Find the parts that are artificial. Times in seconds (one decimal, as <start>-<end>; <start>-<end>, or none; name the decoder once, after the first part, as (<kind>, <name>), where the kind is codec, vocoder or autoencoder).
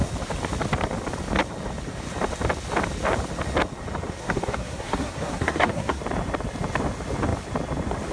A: 4.2-6.0 (codec, SNAC)